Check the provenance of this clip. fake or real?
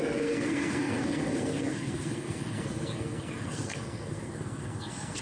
fake